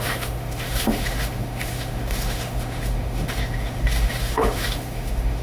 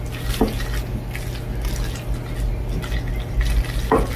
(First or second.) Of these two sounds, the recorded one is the second